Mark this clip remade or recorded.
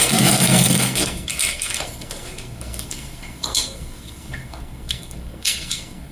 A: remade